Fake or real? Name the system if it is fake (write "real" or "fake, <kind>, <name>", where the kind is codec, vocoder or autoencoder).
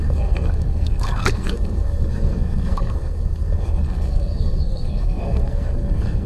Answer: fake, codec, SNAC